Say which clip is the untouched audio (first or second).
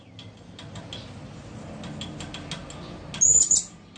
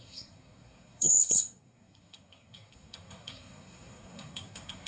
first